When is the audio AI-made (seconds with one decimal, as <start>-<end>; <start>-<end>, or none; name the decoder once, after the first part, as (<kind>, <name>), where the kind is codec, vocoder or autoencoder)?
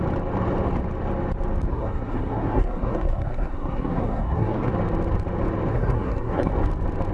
1.7-4.7 (codec, SNAC); 5.7-6.5